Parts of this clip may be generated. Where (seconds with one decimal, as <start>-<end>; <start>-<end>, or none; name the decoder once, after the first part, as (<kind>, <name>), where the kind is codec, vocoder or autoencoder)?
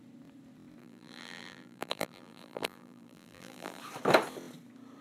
0.8-3.8 (vocoder, BigVGAN v2)